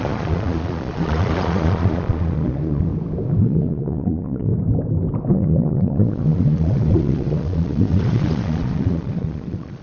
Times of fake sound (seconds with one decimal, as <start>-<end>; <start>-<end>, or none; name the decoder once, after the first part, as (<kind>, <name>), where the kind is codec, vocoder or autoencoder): 0.0-2.9 (vocoder, Vocos); 3.4-4.5; 5.3-9.8